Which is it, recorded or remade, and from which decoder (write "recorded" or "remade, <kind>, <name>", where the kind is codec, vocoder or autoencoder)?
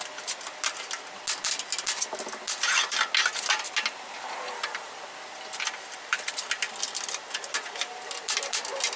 recorded